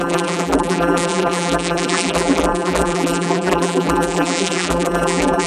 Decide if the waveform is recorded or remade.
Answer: remade